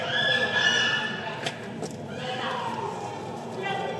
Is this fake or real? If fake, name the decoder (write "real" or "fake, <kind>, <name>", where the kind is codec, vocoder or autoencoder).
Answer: real